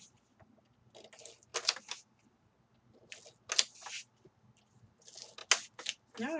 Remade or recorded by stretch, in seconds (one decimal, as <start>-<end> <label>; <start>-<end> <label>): 0.0-6.4 recorded